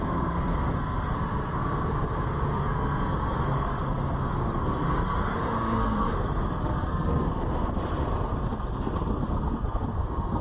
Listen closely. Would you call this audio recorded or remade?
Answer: remade